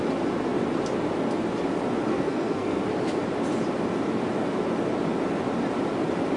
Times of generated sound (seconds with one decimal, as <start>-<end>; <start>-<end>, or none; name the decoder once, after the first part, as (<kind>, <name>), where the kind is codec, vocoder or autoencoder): 2.1-2.8 (codec, SNAC)